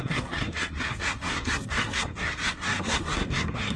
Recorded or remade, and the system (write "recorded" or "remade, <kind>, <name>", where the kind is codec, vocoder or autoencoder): remade, codec, SNAC